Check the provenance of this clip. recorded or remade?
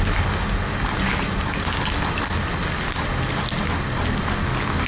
recorded